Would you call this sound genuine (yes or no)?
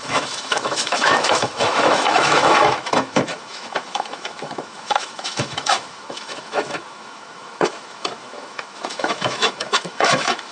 no